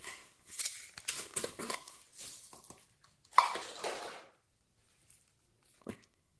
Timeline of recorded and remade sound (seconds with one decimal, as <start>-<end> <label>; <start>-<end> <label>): 0.0-0.6 remade; 0.6-1.1 recorded; 1.1-2.0 remade; 2.0-5.8 recorded; 5.8-6.4 remade